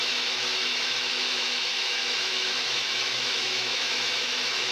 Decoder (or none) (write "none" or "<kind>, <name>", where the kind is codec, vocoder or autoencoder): autoencoder, DAC-VAE